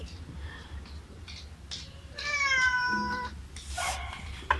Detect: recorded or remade recorded